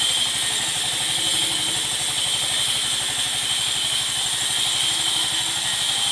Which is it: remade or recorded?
recorded